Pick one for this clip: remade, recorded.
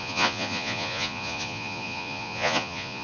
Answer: remade